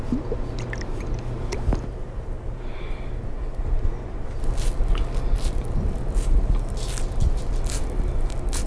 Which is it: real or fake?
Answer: real